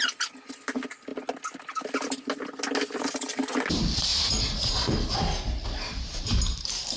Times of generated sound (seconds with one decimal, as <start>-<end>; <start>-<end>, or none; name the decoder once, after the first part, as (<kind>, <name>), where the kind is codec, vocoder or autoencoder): 4.1-4.7 (vocoder, Vocos)